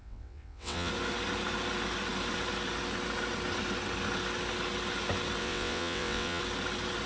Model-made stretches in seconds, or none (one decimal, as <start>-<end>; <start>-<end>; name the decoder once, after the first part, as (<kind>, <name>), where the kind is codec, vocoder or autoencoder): 0.0-0.9 (vocoder, WaveNeXt); 5.4-6.4